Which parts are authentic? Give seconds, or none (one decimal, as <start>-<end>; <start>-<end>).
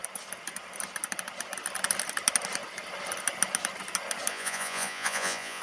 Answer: 0.0-4.3